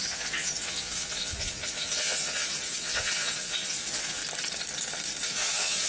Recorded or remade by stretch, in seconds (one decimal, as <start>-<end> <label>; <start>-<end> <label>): 0.0-4.2 remade; 4.2-5.2 recorded; 5.2-5.9 remade